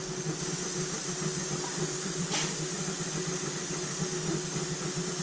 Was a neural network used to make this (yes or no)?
no